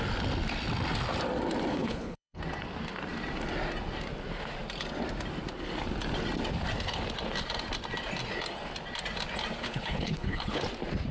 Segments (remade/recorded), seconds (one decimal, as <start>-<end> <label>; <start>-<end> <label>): 0.0-1.7 recorded; 1.7-2.4 remade; 2.4-9.6 recorded; 9.6-10.6 remade; 10.6-11.1 recorded